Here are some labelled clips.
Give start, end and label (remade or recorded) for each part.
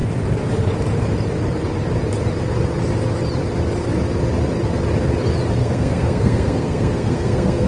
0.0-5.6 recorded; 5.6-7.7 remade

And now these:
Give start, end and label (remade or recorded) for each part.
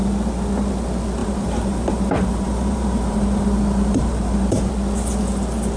0.0-1.2 recorded; 1.2-4.7 remade; 4.7-5.8 recorded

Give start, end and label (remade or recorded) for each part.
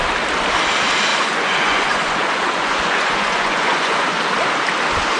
0.0-1.1 recorded; 1.1-4.2 remade; 4.2-5.2 recorded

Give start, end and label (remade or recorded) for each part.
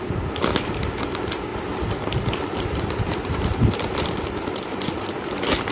0.0-1.5 recorded; 1.5-4.9 remade; 4.9-5.7 recorded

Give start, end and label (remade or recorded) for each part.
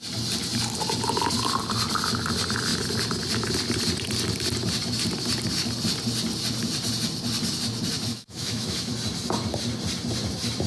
0.0-8.1 recorded; 8.1-8.9 remade; 8.9-10.7 recorded